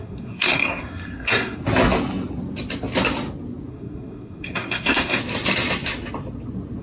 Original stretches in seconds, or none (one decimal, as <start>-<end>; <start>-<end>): 1.6-3.7; 5.2-6.8